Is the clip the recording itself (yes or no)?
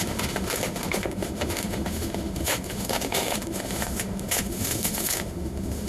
no